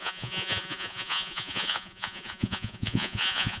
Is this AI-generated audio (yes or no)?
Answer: yes